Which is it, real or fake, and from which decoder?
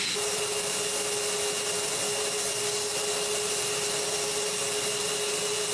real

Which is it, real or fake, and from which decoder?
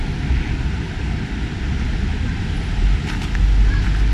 real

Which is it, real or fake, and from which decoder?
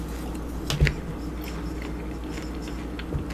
real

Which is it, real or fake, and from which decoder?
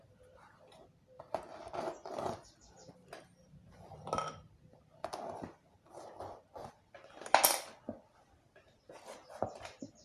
real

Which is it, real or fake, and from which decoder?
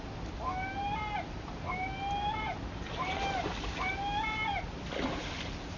real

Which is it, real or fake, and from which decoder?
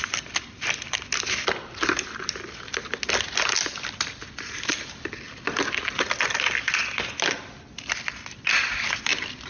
real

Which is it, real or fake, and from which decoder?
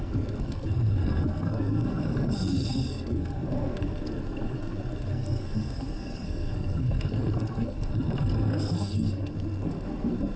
fake, codec, SNAC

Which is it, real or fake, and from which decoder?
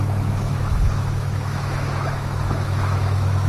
fake, autoencoder, DAC-VAE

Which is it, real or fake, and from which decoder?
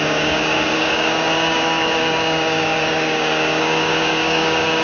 fake, codec, DAC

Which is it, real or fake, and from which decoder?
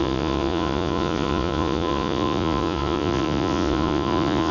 fake, vocoder, Vocos